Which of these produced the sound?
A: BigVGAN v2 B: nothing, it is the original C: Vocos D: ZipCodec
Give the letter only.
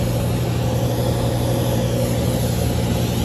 B